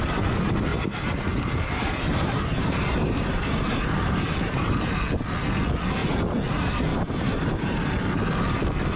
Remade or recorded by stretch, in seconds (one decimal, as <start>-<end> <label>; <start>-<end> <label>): 0.0-0.7 recorded; 0.7-5.0 remade; 5.0-6.9 recorded; 6.9-7.9 remade; 7.9-9.0 recorded